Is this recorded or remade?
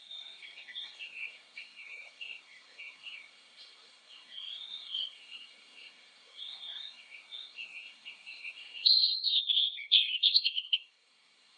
remade